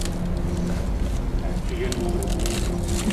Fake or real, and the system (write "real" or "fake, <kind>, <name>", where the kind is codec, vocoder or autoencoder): real